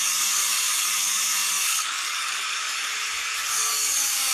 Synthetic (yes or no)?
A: yes